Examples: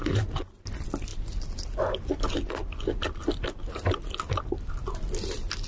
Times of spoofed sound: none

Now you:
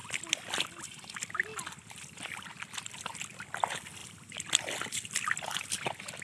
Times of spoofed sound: 0.5-6.2

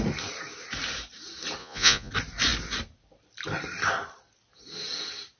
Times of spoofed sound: 1.6-2.1

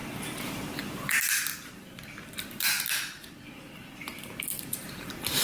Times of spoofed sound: 1.5-4.6

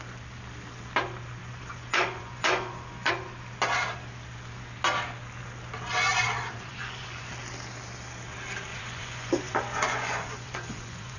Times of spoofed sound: 1.4-3.1; 6.7-7.3; 8.7-11.2

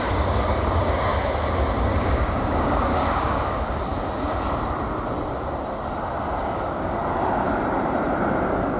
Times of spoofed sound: 0.0-1.1; 2.0-3.9; 6.4-7.0; 8.4-8.8

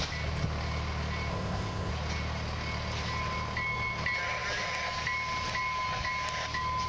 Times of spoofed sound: 1.3-1.9